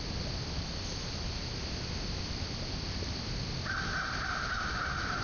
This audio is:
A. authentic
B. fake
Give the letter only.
A